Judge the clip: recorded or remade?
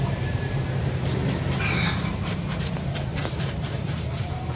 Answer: remade